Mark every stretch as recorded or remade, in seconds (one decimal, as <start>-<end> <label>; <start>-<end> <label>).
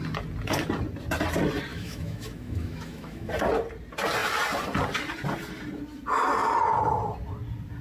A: 0.0-1.7 recorded; 1.7-3.3 remade; 3.3-7.8 recorded